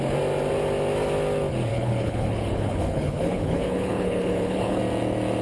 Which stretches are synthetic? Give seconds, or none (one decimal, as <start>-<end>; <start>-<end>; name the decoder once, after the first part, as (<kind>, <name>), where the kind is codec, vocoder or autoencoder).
1.7-4.8 (codec, HILCodec)